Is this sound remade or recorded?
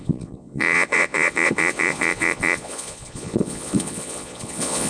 remade